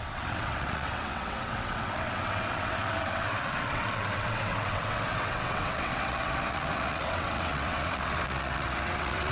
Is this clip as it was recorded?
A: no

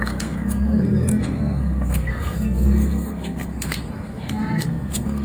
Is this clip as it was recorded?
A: no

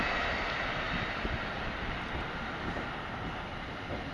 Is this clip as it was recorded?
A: yes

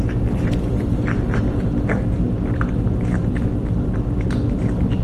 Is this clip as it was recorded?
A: yes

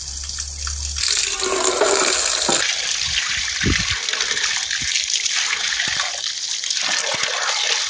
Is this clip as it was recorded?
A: yes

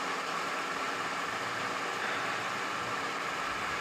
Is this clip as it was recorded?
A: no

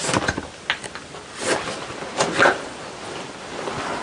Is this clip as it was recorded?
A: yes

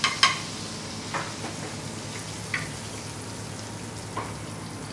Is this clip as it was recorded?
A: yes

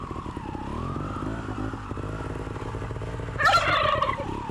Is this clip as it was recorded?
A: yes